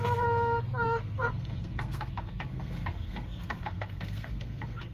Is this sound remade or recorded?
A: remade